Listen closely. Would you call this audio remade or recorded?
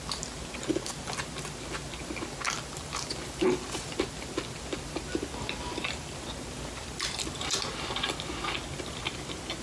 recorded